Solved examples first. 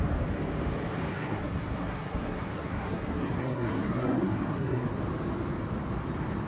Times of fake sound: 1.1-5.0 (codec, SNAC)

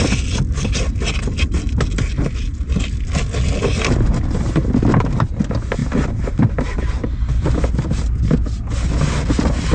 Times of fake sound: none

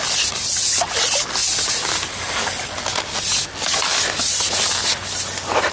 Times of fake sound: none

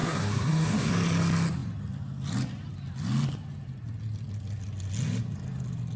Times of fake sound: 0.0-0.9 (codec, SNAC)

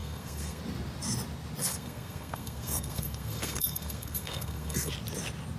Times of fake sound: 0.0-0.6 (codec, SNAC); 1.6-4.9